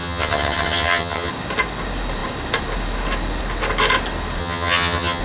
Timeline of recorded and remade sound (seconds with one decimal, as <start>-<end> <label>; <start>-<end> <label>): 0.0-1.3 remade; 1.3-4.4 recorded; 4.4-5.2 remade